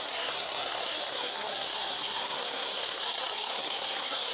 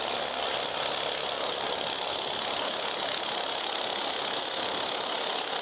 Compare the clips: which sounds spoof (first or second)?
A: first